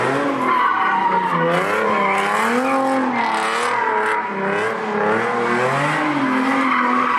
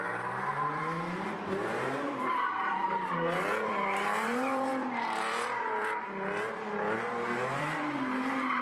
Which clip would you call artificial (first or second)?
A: second